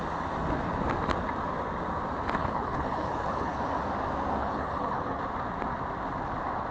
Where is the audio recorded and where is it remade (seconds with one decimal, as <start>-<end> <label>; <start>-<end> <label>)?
0.0-2.4 recorded; 2.4-3.6 remade; 3.6-4.4 recorded; 4.4-5.2 remade; 5.2-6.7 recorded